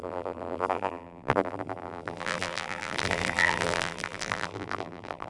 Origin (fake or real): fake